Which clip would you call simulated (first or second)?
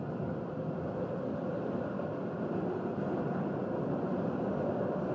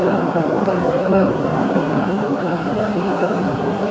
second